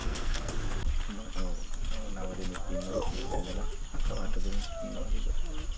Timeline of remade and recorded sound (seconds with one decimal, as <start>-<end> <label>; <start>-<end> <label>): 0.0-0.5 remade; 0.5-2.9 recorded; 2.9-3.5 remade; 3.5-5.8 recorded